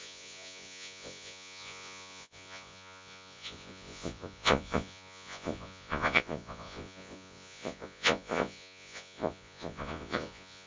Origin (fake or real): fake